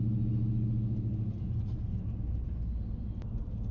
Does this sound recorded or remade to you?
recorded